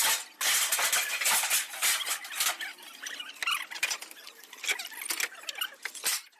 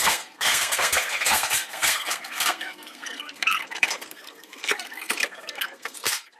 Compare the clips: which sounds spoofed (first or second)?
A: second